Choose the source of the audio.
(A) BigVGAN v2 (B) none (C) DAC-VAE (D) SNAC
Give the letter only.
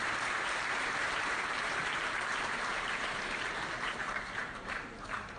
A